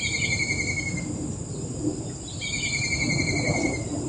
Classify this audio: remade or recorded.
recorded